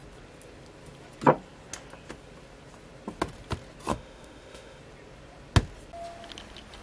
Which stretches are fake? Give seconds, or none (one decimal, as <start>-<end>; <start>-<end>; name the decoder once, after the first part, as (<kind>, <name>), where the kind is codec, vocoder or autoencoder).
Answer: 3.9-4.8 (autoencoder, DAC-VAE)